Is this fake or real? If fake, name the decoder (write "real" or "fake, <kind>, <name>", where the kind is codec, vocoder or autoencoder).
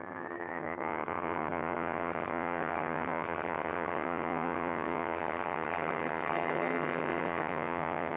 fake, vocoder, HiFi-GAN